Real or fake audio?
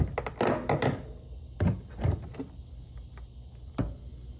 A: real